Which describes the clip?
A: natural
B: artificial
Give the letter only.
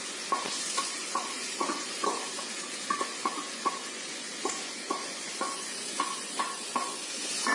B